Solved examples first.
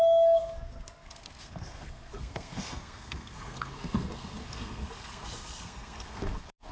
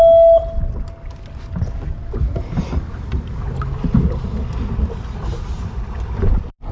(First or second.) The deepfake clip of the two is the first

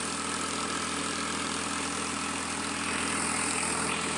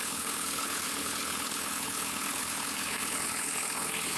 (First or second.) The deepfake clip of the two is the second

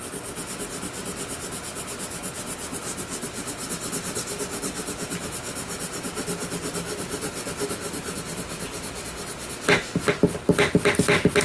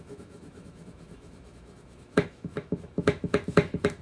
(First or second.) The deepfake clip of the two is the second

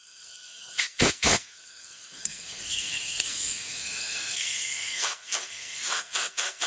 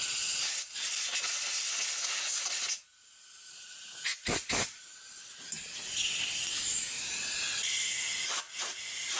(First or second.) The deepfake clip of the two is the first